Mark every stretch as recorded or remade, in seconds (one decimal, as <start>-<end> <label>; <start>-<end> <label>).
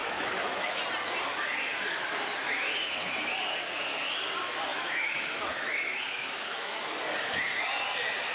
0.0-0.8 remade; 0.8-4.7 recorded; 4.7-7.0 remade; 7.0-8.3 recorded